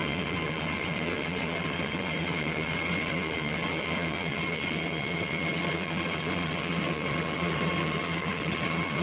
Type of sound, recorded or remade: remade